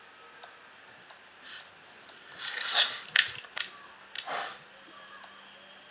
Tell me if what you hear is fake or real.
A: real